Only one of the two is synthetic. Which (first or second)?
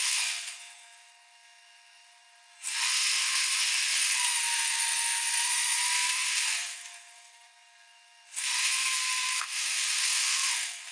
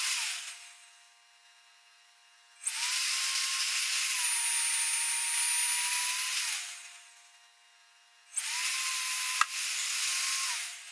first